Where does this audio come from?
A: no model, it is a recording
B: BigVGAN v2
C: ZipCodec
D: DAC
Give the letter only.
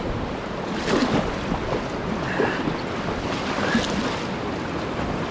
A